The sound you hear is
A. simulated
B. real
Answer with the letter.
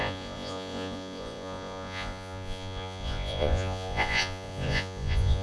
A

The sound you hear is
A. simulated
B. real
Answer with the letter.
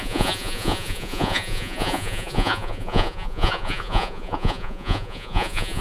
A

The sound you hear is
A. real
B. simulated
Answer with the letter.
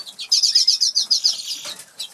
A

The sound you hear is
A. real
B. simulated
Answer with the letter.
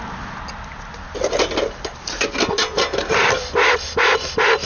A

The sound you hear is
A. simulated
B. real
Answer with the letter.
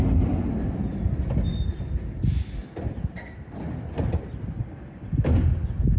B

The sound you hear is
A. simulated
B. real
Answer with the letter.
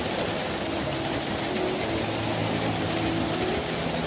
B